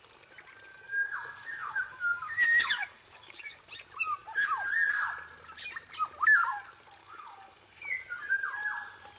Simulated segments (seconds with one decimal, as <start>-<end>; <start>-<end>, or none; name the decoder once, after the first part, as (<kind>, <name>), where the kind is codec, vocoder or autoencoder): 0.7-3.6 (codec, DAC); 7.0-7.8